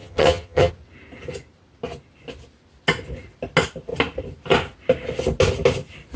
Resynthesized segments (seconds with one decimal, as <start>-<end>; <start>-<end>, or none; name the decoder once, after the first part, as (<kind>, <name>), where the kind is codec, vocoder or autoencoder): 0.0-0.7 (vocoder, HiFi-GAN)